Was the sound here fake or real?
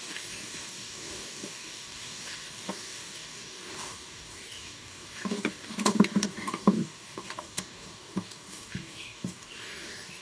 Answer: fake